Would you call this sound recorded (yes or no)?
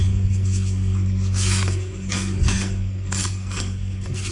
no